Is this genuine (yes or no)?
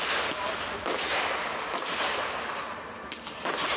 yes